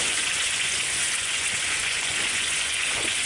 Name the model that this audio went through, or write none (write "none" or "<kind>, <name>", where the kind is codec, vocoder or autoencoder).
vocoder, Vocos